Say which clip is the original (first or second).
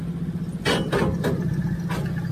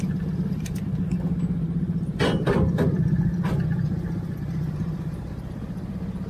first